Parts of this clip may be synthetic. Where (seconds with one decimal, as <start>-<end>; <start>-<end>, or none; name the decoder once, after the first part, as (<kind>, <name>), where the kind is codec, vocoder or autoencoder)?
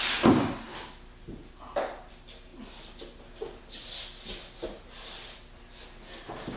none